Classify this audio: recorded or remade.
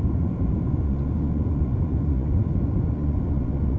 remade